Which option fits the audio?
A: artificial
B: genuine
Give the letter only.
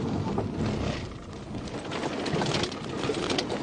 B